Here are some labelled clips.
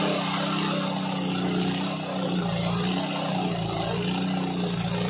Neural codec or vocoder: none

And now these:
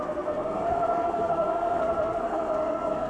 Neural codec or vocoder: codec, SNAC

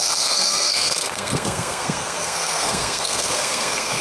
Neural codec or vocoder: codec, SNAC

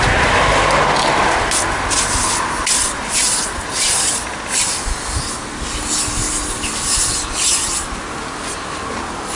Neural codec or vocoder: none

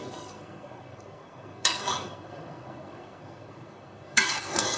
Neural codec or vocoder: codec, SNAC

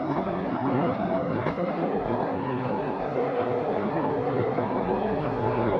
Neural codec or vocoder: codec, SNAC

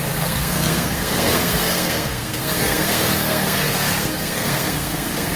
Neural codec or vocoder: codec, SNAC